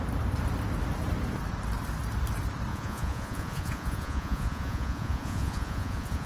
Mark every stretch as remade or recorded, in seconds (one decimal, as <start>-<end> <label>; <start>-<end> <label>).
0.0-2.7 recorded; 2.7-6.3 remade